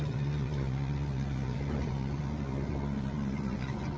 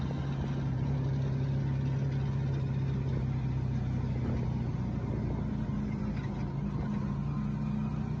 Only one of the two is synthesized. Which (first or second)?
first